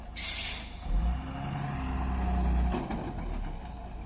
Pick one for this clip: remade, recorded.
recorded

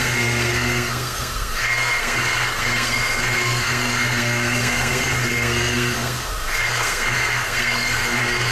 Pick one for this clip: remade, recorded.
remade